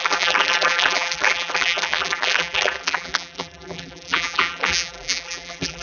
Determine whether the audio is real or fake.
fake